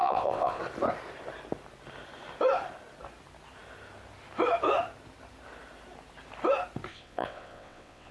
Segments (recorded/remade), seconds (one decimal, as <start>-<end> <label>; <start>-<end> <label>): 0.0-0.6 remade; 0.6-6.9 recorded; 6.9-8.1 remade